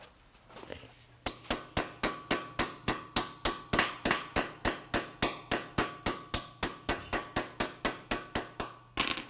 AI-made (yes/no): no